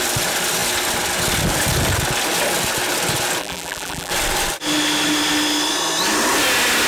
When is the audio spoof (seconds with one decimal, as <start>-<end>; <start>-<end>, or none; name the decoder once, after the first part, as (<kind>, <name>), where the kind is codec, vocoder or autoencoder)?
3.4-4.1 (vocoder, BigVGAN v2)